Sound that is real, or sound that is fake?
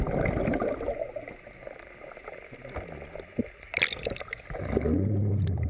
real